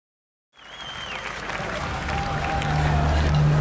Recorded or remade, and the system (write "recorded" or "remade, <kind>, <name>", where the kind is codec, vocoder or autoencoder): recorded